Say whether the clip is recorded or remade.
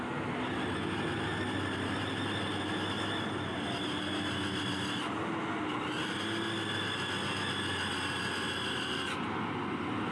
recorded